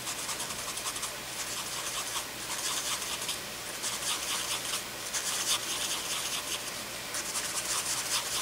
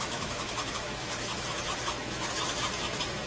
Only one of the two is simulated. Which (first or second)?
second